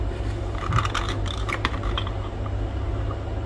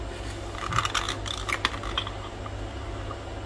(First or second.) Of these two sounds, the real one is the second